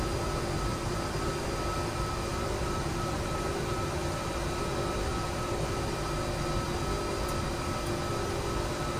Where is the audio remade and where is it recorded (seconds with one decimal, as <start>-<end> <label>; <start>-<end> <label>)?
0.0-0.7 recorded; 0.7-1.3 remade; 1.3-2.3 recorded; 2.3-4.3 remade; 4.3-5.1 recorded; 5.1-5.8 remade; 5.8-9.0 recorded